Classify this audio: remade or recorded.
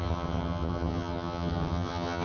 remade